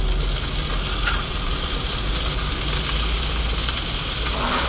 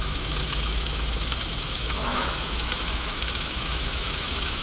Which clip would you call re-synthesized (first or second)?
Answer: second